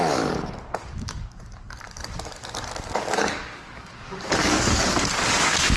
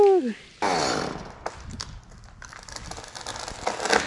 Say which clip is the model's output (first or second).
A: first